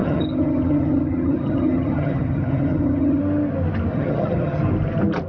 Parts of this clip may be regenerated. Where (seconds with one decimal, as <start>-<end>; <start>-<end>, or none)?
0.0-3.2; 3.9-4.6

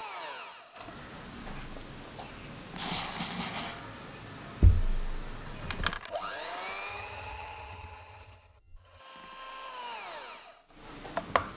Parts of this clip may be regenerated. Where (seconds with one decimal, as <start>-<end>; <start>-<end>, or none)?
6.9-9.0

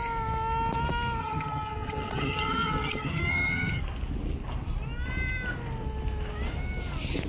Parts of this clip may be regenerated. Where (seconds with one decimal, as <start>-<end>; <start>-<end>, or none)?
1.2-3.8

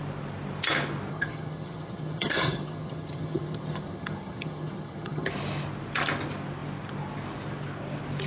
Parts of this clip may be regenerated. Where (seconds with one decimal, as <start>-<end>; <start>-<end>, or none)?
1.1-5.3